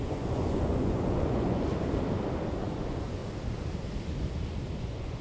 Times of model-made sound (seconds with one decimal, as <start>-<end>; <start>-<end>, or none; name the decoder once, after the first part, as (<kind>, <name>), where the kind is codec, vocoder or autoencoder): 0.0-1.7 (vocoder, Vocos); 2.6-3.2; 4.8-5.2

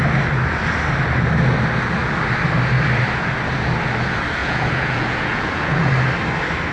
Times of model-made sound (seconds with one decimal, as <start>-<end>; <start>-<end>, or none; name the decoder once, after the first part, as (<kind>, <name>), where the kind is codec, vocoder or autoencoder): 4.4-5.9 (vocoder, Vocos)